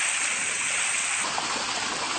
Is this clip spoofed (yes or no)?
no